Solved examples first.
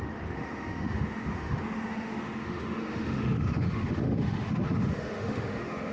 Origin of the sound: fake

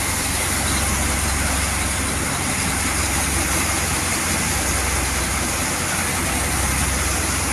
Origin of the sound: real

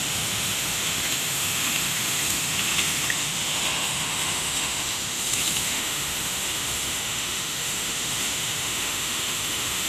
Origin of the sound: fake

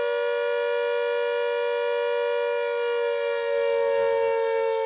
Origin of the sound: real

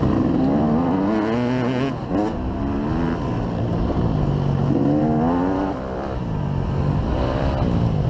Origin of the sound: real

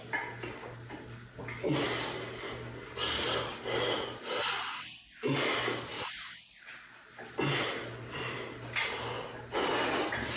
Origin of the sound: real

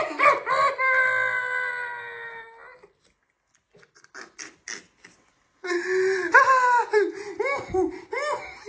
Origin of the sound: real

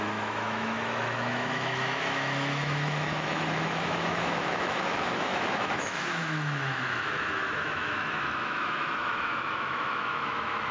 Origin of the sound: fake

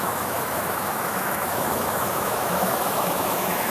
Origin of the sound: fake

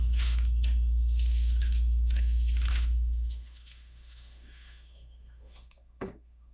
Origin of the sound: fake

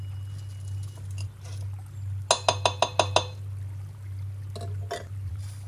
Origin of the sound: real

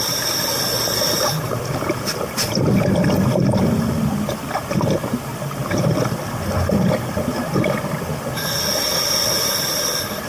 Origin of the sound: real